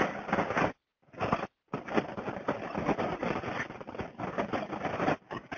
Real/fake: real